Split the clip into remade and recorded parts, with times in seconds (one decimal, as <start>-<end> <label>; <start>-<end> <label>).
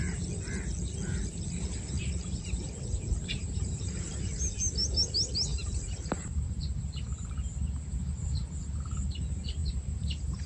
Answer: 0.0-3.4 recorded; 3.4-4.1 remade; 4.1-5.5 recorded; 5.5-6.6 remade; 6.6-9.6 recorded; 9.6-10.5 remade